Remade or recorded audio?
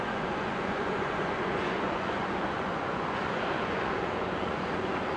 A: remade